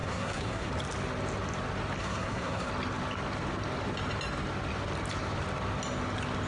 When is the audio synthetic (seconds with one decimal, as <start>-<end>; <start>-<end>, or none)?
0.0-0.7; 2.0-2.7